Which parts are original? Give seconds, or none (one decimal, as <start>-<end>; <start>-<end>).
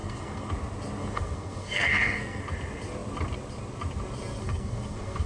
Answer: 0.5-1.0; 2.4-4.4